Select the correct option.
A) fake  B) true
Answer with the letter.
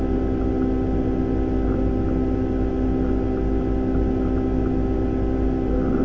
B